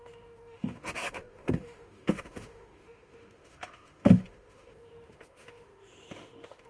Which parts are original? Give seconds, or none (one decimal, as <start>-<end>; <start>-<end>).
none

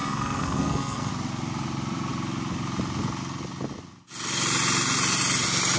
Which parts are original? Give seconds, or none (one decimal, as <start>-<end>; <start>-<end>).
1.1-5.8

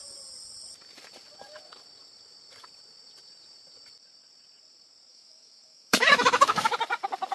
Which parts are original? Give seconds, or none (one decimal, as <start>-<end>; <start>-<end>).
0.0-5.1; 6.7-7.3

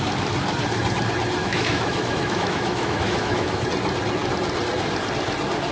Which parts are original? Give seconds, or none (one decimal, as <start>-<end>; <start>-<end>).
0.0-1.4; 3.6-5.7

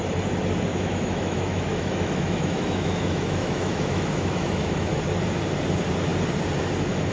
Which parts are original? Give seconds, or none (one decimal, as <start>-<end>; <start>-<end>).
0.0-0.7; 5.0-7.1

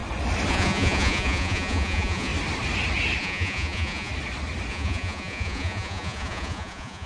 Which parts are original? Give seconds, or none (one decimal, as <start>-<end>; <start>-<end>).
0.0-0.5; 2.3-3.2; 4.1-4.7

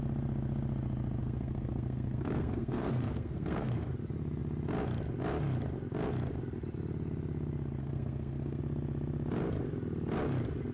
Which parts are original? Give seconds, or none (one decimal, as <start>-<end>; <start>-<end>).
0.0-1.2; 3.9-7.8; 8.6-10.7